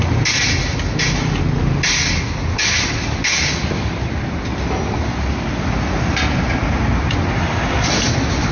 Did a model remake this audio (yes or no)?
no